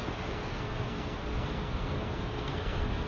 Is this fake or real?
fake